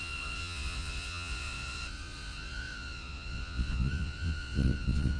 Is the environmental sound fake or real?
fake